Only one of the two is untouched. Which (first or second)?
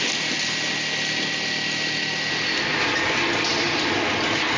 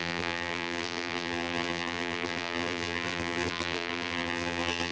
first